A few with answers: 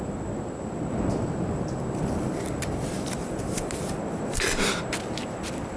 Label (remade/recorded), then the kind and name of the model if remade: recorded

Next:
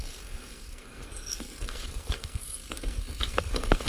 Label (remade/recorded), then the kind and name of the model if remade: remade, codec, SNAC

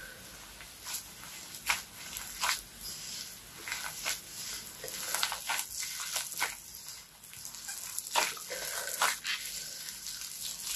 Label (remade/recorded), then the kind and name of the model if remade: recorded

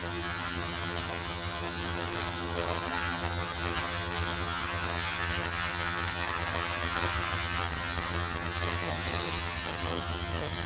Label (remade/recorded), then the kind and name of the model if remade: remade, vocoder, HiFi-GAN